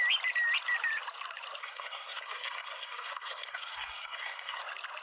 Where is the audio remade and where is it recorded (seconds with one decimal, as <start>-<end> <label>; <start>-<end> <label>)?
0.0-1.6 recorded; 1.6-4.6 remade; 4.6-5.0 recorded